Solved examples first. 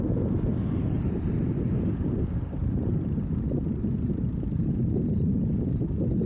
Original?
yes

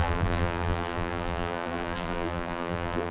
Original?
no